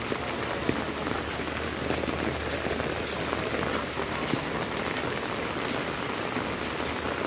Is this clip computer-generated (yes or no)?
no